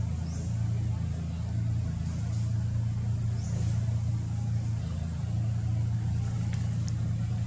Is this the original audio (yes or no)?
yes